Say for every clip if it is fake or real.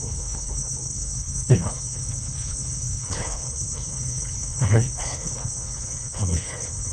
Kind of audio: fake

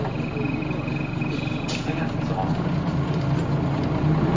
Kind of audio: real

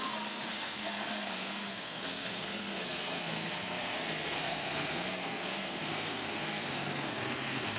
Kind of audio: fake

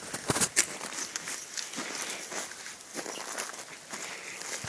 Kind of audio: real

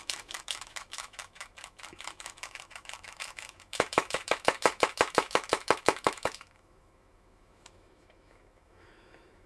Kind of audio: fake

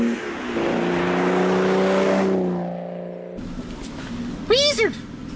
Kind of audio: real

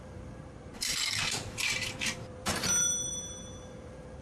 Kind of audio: fake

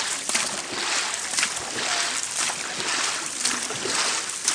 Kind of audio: real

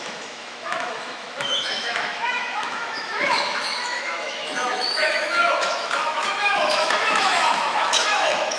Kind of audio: fake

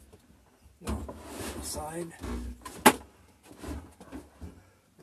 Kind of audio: real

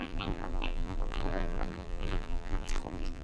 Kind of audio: fake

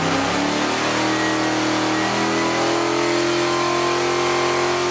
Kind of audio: real